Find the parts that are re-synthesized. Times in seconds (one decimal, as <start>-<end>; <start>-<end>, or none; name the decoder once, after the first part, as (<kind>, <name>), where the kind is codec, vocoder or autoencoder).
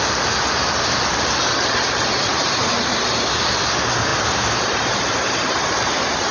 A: 2.1-3.5 (vocoder, BigVGAN v2); 4.1-6.3